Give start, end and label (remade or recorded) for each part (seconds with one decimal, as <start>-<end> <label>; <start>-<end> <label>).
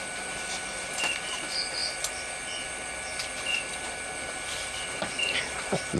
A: 0.0-6.0 recorded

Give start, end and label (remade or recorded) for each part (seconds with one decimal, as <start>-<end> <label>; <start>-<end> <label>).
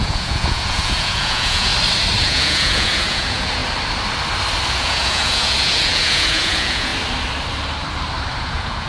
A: 0.0-1.7 remade; 1.7-2.2 recorded; 2.2-3.6 remade; 3.6-4.7 recorded; 4.7-6.9 remade; 6.9-8.4 recorded; 8.4-8.9 remade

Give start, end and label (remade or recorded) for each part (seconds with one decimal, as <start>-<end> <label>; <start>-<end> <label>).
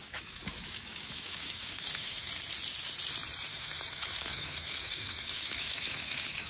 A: 0.0-2.3 remade; 2.3-3.5 recorded; 3.5-6.5 remade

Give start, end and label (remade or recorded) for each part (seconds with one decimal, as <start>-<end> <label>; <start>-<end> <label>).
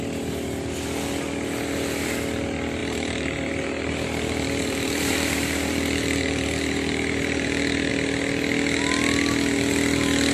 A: 0.0-2.8 recorded; 2.8-7.9 remade; 7.9-10.3 recorded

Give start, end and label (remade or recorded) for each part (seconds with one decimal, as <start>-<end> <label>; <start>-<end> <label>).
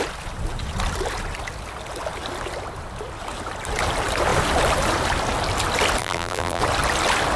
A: 0.0-6.0 recorded; 6.0-6.6 remade; 6.6-7.4 recorded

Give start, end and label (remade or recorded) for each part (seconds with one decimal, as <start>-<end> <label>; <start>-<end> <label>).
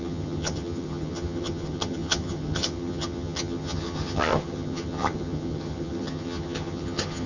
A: 0.0-7.3 remade